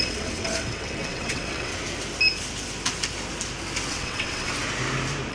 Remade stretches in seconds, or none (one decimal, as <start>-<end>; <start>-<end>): 0.0-1.7; 3.9-4.5